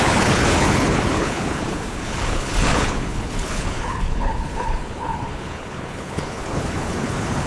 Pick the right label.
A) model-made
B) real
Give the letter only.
A